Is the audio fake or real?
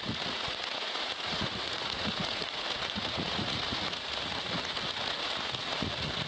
fake